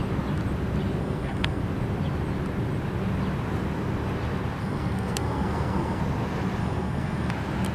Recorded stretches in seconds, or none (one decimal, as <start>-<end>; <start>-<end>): 0.0-1.0; 1.6-4.6; 6.0-6.6; 7.3-7.7